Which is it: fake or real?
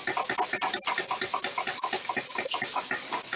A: real